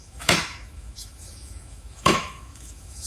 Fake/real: fake